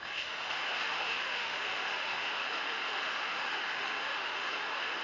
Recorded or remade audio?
remade